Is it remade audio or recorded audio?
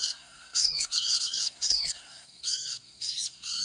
remade